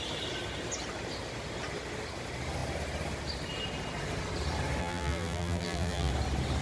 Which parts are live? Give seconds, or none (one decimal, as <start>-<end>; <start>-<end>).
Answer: 0.0-4.8; 6.1-6.6